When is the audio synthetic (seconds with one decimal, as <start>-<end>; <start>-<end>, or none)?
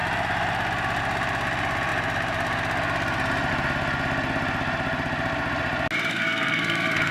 6.1-7.1